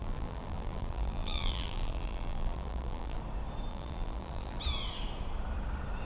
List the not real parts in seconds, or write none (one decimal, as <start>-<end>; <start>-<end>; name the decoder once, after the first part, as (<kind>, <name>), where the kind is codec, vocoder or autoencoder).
0.0-3.2 (vocoder, BigVGAN v2); 3.7-4.6